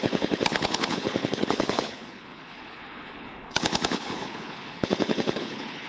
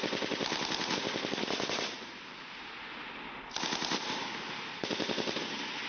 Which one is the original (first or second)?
second